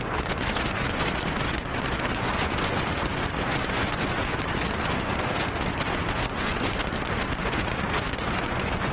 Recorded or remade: remade